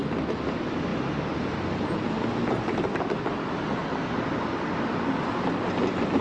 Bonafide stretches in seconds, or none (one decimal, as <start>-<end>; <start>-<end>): 0.0-6.2